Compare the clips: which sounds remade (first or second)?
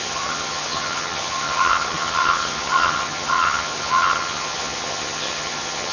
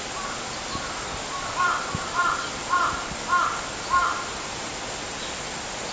first